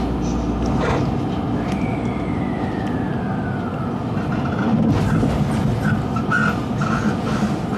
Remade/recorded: recorded